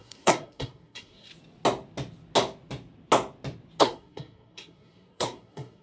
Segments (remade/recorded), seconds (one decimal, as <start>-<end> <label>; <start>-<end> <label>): 0.0-1.3 remade; 1.3-3.8 recorded; 3.8-5.8 remade